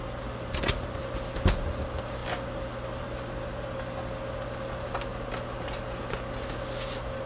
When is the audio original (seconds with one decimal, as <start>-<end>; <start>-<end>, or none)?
0.0-7.3